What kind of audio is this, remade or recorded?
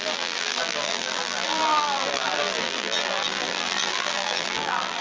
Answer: remade